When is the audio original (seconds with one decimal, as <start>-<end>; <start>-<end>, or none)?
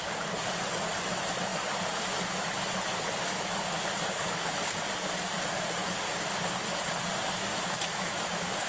0.0-7.5